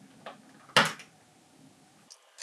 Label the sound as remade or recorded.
recorded